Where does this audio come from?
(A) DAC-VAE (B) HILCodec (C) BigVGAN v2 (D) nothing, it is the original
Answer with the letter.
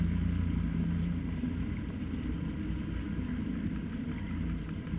D